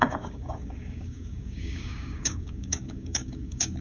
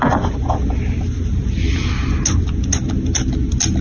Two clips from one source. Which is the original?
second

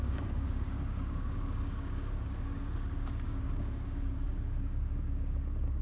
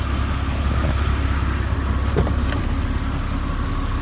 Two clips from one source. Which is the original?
second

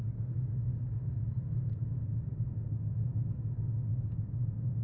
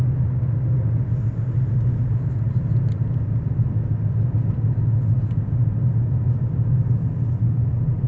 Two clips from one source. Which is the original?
second